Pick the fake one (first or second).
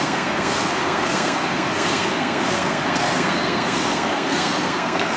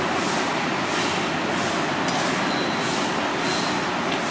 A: first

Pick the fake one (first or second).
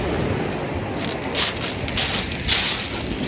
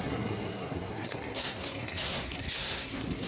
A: second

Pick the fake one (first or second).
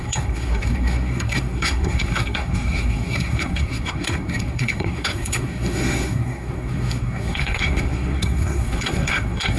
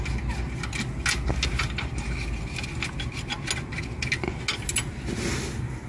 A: first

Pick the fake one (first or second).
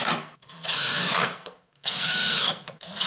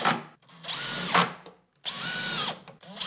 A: first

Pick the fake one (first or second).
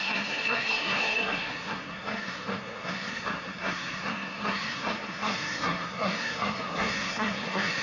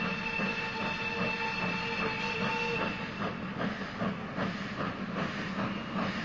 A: first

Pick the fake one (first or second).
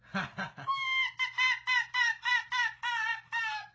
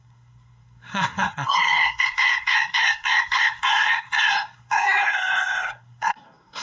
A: second